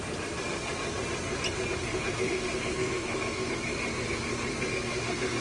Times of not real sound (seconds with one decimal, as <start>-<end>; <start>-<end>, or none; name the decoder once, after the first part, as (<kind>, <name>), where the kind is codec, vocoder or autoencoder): 1.9-3.5 (codec, SNAC); 4.5-5.4